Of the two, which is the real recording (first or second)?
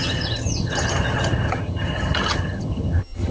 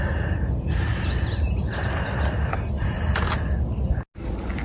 second